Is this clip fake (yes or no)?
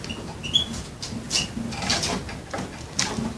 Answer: no